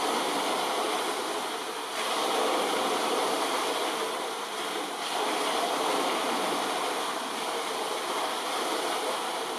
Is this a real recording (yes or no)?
yes